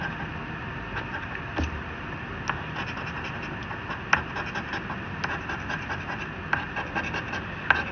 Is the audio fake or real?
real